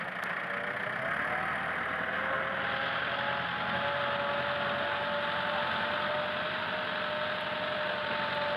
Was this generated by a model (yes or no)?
no